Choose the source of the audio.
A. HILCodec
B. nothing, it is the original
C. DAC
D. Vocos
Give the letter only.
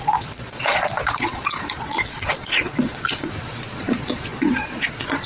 D